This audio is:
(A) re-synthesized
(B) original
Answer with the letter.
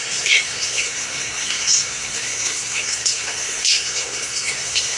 A